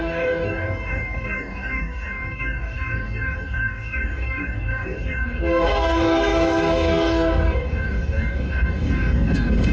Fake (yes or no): yes